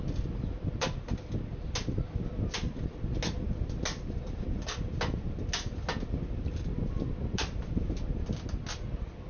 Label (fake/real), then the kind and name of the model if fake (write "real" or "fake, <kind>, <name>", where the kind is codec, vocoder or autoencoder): real